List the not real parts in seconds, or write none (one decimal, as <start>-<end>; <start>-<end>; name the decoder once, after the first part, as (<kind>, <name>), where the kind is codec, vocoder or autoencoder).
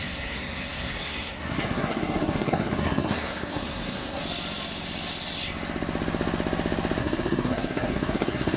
0.0-4.2 (codec, SNAC); 7.0-8.6